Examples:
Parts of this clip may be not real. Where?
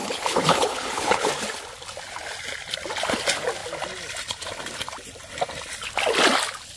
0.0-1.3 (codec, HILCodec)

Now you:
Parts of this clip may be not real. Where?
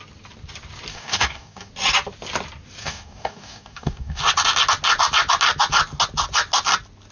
0.9-1.7 (codec, DAC); 2.8-4.2